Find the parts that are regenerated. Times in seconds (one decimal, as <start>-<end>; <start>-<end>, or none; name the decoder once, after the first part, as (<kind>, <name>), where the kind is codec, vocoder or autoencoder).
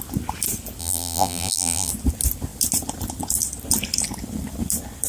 0.8-1.9 (vocoder, BigVGAN v2)